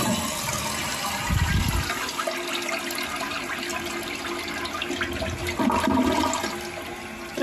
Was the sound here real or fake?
real